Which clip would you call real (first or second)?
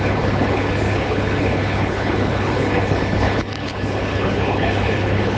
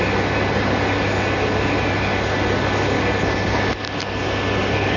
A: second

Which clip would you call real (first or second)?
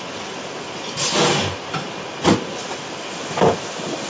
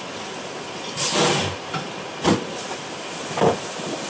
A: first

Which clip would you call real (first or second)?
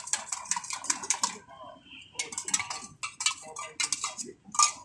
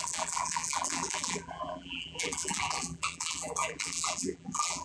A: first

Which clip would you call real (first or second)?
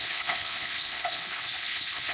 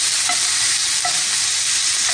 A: second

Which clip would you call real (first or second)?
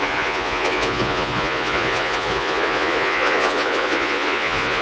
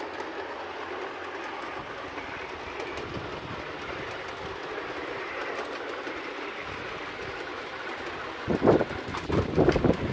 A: second